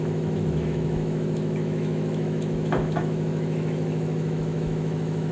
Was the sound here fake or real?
fake